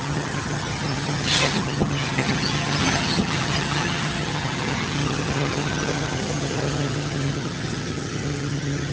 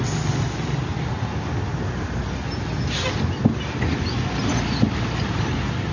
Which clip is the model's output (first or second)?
first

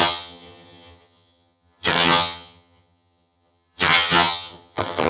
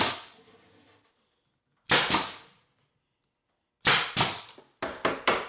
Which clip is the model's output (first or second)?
first